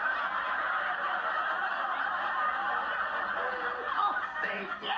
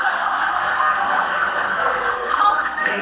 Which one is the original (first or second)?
first